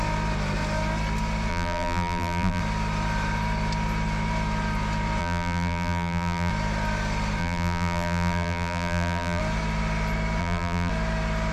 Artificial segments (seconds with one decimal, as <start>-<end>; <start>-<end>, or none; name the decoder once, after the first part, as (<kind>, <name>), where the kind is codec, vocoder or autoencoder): 1.5-2.6 (vocoder, BigVGAN v2); 5.2-6.5; 7.4-9.4; 10.4-10.9